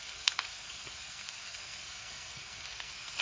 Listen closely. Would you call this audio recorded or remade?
remade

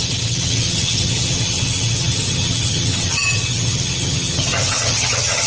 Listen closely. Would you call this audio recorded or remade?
remade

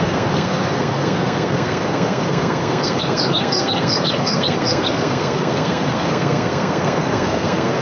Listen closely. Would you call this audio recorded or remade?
remade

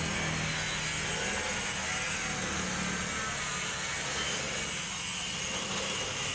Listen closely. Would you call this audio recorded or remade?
recorded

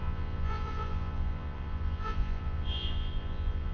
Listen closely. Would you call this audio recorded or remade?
remade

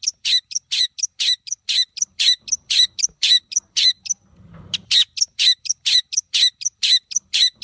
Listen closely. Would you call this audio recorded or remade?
remade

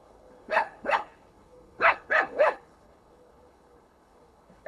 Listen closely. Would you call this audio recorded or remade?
remade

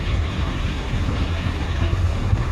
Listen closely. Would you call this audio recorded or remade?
remade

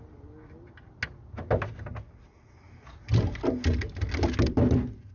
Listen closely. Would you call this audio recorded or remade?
recorded